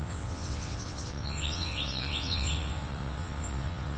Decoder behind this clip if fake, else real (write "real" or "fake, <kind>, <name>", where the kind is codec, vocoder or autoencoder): fake, vocoder, WaveNeXt